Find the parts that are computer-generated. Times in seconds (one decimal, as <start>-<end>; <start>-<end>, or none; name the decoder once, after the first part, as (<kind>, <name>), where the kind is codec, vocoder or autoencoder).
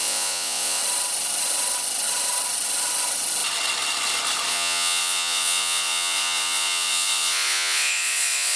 0.0-0.8 (vocoder, Vocos); 4.5-8.6